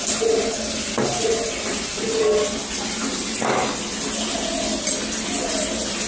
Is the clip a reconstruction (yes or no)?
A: no